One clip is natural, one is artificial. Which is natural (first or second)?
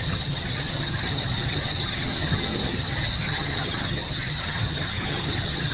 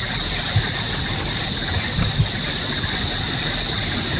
second